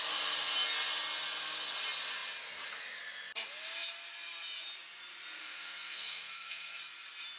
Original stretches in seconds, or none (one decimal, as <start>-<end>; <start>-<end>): 0.0-5.4; 6.8-7.4